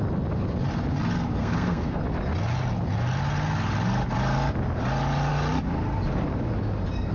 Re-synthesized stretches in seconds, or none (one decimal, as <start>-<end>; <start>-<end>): 1.4-2.0